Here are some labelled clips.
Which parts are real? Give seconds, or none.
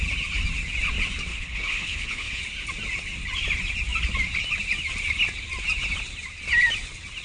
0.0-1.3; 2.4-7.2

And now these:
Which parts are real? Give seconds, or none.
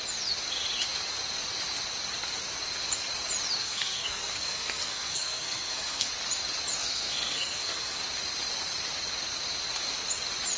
0.0-3.6; 6.1-6.8; 8.0-10.6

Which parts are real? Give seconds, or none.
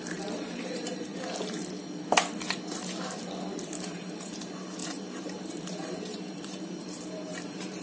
1.1-3.7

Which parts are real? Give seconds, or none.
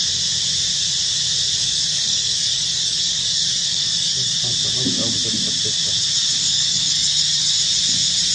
0.0-1.6; 4.4-6.4; 7.6-8.3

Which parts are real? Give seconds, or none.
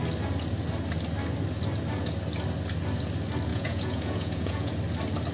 0.0-3.5; 4.7-5.3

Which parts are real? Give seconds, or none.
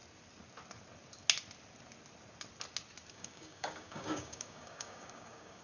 0.0-3.1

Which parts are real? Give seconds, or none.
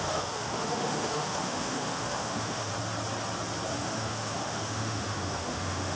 2.7-3.7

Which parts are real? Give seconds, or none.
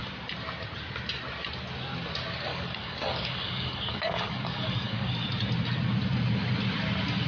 0.0-2.5; 5.1-7.3